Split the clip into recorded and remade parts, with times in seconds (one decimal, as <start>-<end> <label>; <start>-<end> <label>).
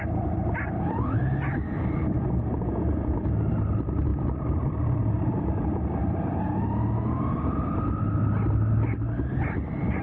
0.0-10.0 recorded